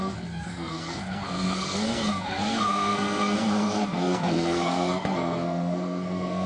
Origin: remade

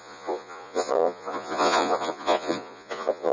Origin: remade